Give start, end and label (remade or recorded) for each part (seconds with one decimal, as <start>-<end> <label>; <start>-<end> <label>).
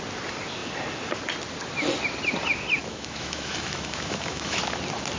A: 0.0-2.8 recorded; 2.8-4.6 remade; 4.6-5.2 recorded